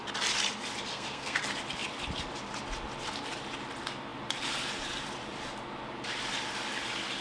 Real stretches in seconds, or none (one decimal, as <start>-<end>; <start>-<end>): 0.0-0.9; 1.4-7.2